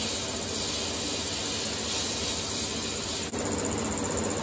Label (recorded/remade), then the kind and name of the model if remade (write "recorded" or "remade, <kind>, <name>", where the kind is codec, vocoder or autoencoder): recorded